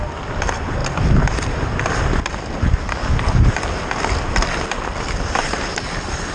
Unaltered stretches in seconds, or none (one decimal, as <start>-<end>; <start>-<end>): 0.0-6.3